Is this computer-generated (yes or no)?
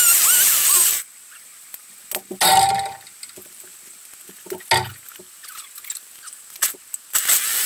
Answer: no